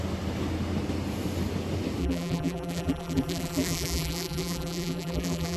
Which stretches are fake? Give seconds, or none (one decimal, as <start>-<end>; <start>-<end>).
2.0-5.6